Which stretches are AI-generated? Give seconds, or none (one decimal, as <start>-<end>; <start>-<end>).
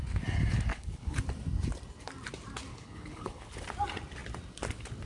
0.7-1.2; 2.7-3.6